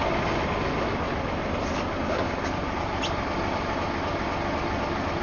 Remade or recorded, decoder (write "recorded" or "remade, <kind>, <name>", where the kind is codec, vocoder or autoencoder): recorded